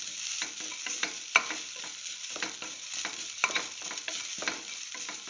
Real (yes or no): no